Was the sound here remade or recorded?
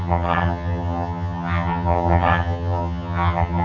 remade